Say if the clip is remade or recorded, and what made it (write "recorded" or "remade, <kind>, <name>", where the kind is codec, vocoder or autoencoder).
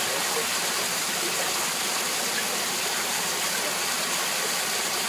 recorded